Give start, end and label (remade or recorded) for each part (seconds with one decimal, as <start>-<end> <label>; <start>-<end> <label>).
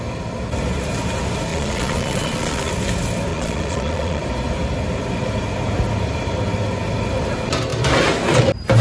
0.0-1.5 recorded; 1.5-2.7 remade; 2.7-3.3 recorded; 3.3-4.2 remade; 4.2-8.8 recorded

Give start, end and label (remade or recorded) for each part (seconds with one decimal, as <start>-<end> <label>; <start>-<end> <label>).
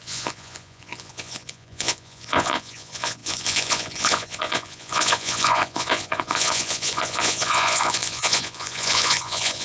0.0-9.6 remade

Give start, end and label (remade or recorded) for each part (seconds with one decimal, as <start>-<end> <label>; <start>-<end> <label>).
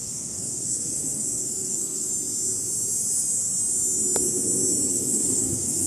0.0-2.1 remade; 2.1-4.9 recorded; 4.9-5.9 remade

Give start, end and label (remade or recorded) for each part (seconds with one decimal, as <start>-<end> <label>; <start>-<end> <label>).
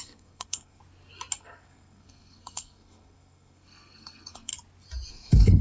0.0-0.8 remade; 0.8-1.4 recorded; 1.4-4.5 remade; 4.5-5.1 recorded; 5.1-5.6 remade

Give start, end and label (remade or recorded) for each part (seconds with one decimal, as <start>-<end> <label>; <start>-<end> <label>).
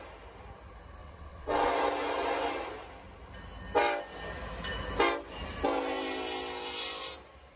0.0-1.0 recorded; 1.0-1.7 remade; 1.7-7.6 recorded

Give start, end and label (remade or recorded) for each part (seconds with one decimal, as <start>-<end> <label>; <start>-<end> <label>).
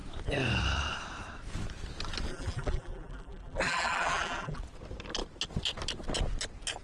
0.0-2.3 recorded; 2.3-4.6 remade; 4.6-6.8 recorded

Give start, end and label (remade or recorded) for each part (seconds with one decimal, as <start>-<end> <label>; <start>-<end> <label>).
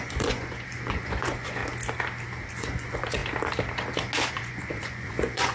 0.0-1.6 remade; 1.6-2.5 recorded; 2.5-3.2 remade; 3.2-4.3 recorded; 4.3-5.5 remade